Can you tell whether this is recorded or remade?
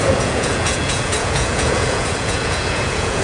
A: remade